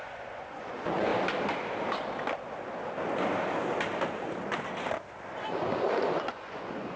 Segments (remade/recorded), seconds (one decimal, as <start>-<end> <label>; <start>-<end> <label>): 0.0-1.1 remade; 1.1-5.3 recorded; 5.3-7.0 remade